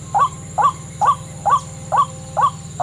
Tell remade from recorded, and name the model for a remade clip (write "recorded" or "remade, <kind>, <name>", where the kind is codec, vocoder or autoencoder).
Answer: recorded